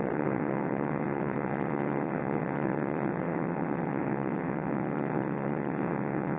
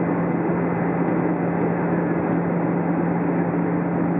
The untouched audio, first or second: second